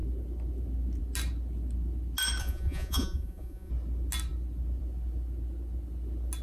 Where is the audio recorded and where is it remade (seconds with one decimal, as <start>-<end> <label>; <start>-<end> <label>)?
0.0-2.4 recorded; 2.4-3.7 remade; 3.7-6.4 recorded